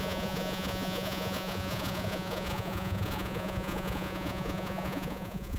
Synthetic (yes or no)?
yes